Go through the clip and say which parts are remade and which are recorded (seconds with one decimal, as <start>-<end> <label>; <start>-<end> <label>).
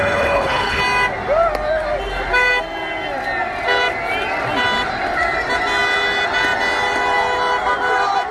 0.0-0.8 remade; 0.8-8.3 recorded